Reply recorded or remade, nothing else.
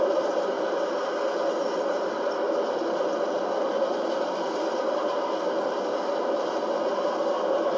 recorded